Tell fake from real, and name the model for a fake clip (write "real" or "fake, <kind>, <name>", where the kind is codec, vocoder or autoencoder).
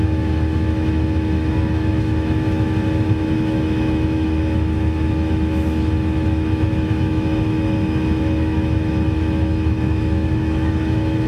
fake, autoencoder, DAC-VAE